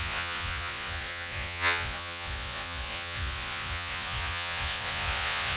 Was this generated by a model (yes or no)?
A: yes